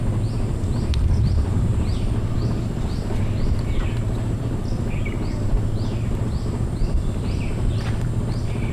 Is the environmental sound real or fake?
fake